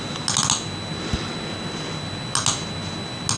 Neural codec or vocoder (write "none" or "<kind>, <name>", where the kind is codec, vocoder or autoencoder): none